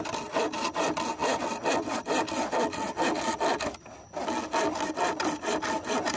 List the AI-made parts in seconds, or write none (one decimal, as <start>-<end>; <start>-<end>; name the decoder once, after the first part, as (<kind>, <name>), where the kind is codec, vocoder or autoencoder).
none